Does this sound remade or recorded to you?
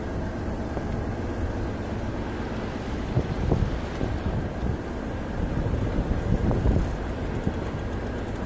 recorded